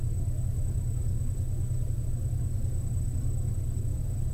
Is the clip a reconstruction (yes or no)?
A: no